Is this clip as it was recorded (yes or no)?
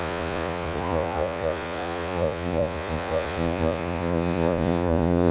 no